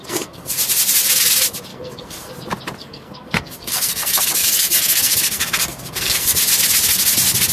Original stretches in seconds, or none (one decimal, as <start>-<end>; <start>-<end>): 0.6-1.7; 2.3-2.8; 6.4-7.5